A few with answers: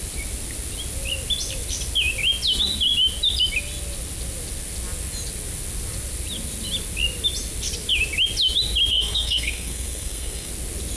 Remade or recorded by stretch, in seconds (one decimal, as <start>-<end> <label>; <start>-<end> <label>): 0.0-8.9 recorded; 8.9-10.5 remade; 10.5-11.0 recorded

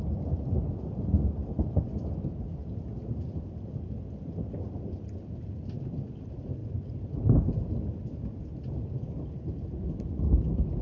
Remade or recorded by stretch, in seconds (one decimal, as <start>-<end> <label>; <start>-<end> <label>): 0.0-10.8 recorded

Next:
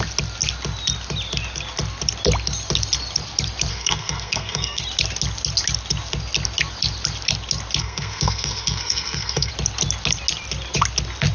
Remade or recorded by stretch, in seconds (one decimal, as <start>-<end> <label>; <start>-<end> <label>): 0.0-3.7 recorded; 3.7-4.8 remade; 4.8-7.8 recorded; 7.8-9.5 remade; 9.5-11.3 recorded

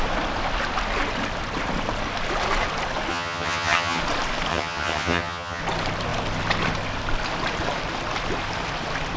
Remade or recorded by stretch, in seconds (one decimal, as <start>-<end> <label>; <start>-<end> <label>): 0.0-3.1 recorded; 3.1-4.0 remade; 4.0-4.5 recorded; 4.5-5.6 remade; 5.6-9.2 recorded